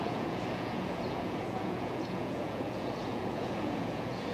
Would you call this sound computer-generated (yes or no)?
yes